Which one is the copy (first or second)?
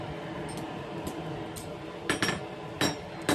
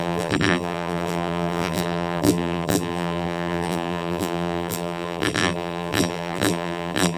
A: second